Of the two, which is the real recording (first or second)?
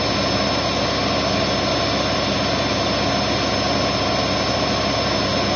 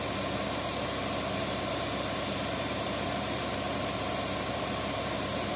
first